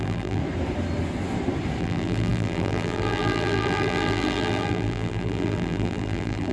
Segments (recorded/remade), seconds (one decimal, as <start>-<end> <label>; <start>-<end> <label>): 0.0-0.4 remade; 0.4-1.8 recorded; 1.8-6.5 remade